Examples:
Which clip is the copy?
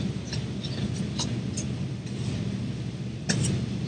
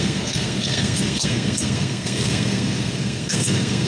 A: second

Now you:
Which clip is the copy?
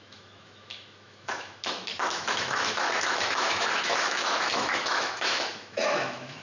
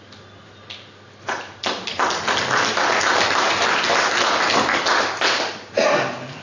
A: first